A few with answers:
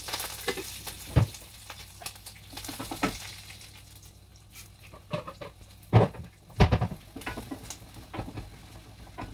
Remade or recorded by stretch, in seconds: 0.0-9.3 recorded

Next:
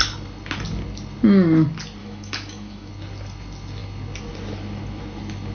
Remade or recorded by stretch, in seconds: 0.0-2.0 recorded; 2.0-2.9 remade; 2.9-5.5 recorded

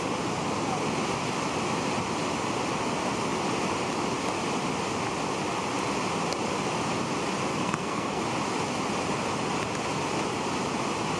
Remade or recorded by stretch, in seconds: 0.0-7.5 recorded; 7.5-8.2 remade; 8.2-11.2 recorded

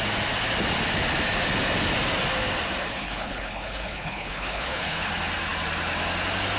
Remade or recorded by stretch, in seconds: 0.0-2.9 recorded; 2.9-5.1 remade; 5.1-6.6 recorded

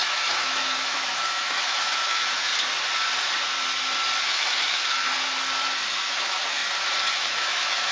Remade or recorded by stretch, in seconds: 0.0-2.5 remade; 2.5-4.2 recorded; 4.2-5.1 remade; 5.1-5.9 recorded; 5.9-6.6 remade; 6.6-7.1 recorded; 7.1-7.9 remade

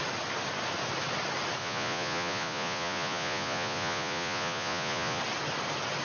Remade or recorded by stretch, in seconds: 0.0-1.6 recorded; 1.6-5.2 remade; 5.2-6.0 recorded